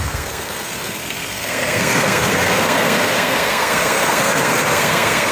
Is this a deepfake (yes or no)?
yes